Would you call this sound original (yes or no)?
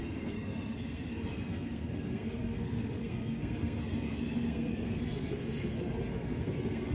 no